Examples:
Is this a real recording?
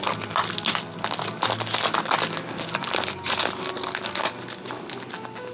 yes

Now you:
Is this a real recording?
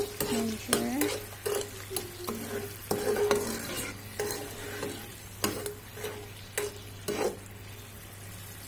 yes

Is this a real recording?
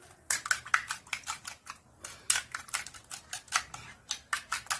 yes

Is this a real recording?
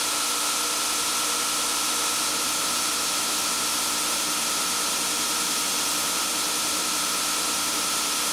yes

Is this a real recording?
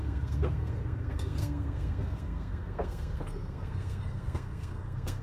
no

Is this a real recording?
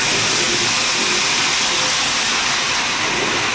yes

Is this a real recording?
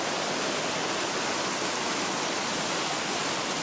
yes